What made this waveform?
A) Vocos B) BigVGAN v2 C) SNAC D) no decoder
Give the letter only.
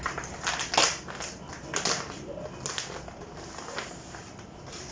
D